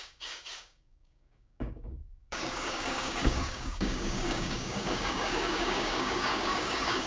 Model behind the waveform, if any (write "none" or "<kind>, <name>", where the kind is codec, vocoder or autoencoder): codec, DAC